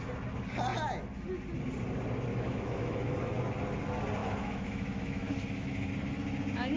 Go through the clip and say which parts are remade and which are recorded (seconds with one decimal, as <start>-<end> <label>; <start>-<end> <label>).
0.0-2.3 recorded; 2.3-3.4 remade; 3.4-4.2 recorded; 4.2-5.9 remade; 5.9-6.8 recorded